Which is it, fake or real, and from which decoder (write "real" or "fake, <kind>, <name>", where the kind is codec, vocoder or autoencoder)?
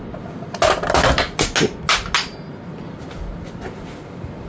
real